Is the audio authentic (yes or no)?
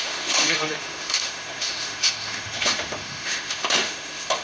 no